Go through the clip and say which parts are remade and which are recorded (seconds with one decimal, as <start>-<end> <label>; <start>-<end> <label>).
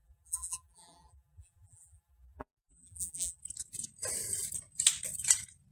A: 0.0-3.4 remade; 3.4-5.7 recorded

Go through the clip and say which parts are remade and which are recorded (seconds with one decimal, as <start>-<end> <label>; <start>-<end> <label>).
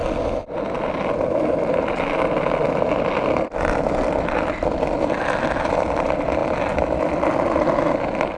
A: 0.0-5.0 recorded; 5.0-6.4 remade; 6.4-7.9 recorded; 7.9-8.4 remade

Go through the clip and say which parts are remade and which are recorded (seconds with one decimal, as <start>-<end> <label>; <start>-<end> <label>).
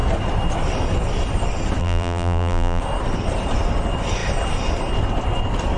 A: 0.0-1.8 recorded; 1.8-2.8 remade; 2.8-5.8 recorded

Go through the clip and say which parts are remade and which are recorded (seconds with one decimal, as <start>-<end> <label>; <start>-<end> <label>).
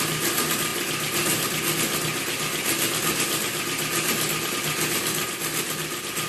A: 0.0-6.3 recorded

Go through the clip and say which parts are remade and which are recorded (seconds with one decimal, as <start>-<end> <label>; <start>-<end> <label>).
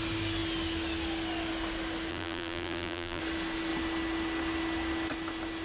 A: 0.0-2.1 recorded; 2.1-3.2 remade; 3.2-5.6 recorded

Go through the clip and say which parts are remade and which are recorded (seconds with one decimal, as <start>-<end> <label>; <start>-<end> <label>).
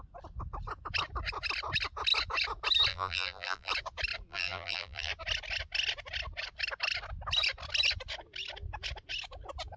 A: 0.0-2.9 recorded; 2.9-3.7 remade; 3.7-4.3 recorded; 4.3-5.1 remade; 5.1-9.8 recorded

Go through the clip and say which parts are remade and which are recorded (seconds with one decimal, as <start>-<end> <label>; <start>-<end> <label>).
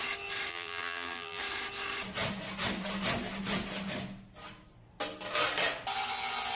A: 0.0-0.5 recorded; 0.5-1.4 remade; 1.4-6.5 recorded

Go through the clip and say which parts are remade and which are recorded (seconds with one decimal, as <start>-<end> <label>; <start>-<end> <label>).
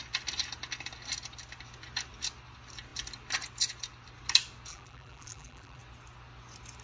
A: 0.0-4.7 recorded; 4.7-5.8 remade; 5.8-6.8 recorded